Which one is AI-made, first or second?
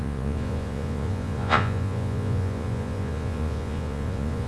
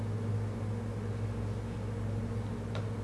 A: first